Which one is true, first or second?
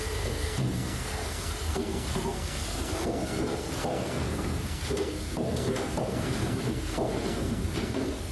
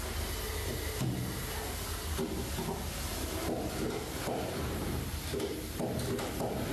second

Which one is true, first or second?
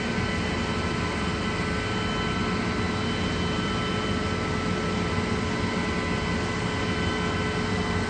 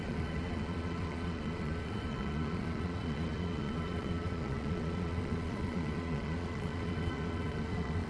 first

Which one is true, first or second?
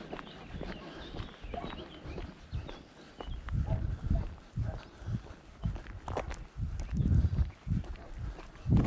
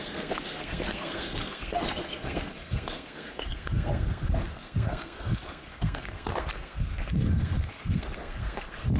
first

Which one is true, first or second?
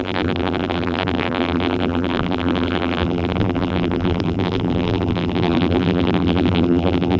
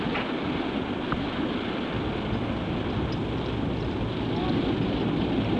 second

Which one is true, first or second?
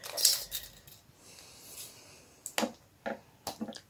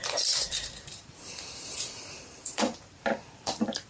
first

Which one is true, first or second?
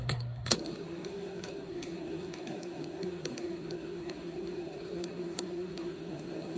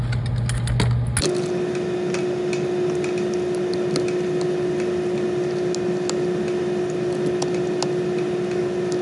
second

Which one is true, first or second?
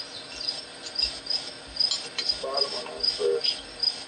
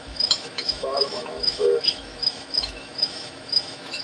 first